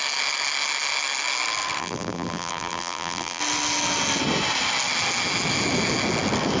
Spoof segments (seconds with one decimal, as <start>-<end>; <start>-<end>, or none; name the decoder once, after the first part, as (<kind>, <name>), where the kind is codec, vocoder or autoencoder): 1.8-3.4 (vocoder, BigVGAN v2)